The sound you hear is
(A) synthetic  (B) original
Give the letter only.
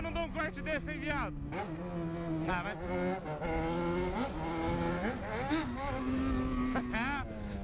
B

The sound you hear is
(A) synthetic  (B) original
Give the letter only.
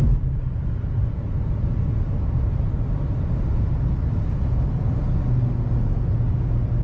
B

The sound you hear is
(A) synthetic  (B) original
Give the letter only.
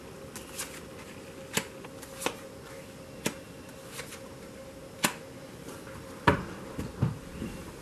B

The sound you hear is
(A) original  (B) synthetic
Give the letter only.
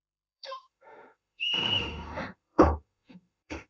B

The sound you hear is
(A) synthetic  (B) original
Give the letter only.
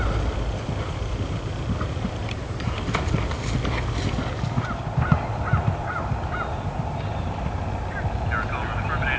B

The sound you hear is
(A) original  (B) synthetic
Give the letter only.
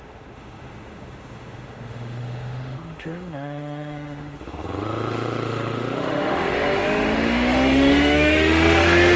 B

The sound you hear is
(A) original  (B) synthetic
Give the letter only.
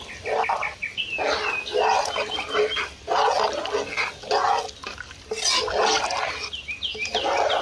A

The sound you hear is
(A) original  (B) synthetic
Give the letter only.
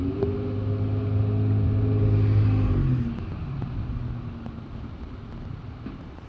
A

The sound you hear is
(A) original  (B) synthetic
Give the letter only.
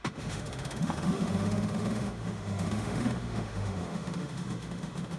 B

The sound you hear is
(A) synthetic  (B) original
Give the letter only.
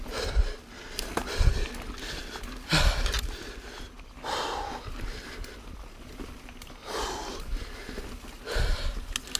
B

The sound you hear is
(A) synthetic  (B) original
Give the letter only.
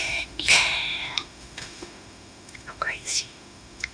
A